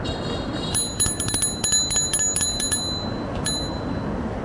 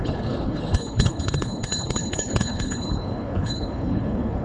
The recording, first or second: first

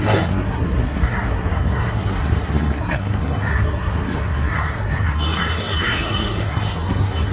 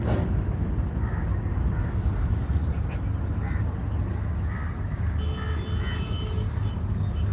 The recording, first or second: second